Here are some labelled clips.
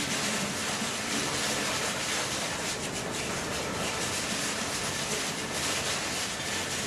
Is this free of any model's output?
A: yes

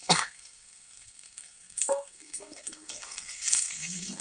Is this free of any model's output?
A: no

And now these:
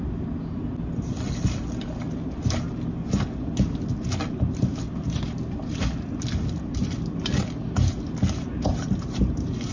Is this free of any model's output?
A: yes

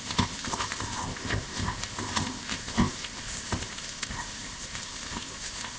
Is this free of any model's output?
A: no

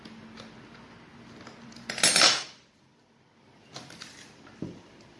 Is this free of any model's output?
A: yes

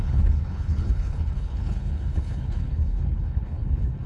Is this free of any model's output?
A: no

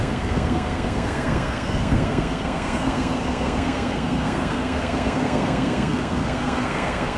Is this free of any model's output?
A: no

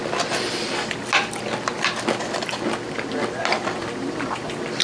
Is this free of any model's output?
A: yes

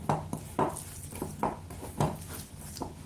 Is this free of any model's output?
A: yes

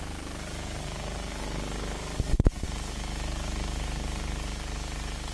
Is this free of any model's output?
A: no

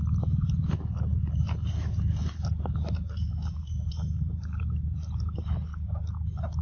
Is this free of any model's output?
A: yes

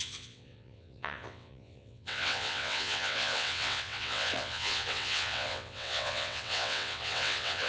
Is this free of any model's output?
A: no